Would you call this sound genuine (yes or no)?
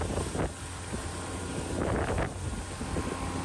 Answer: yes